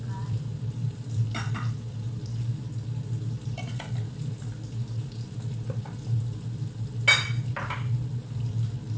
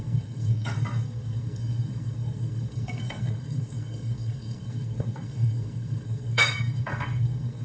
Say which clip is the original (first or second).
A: first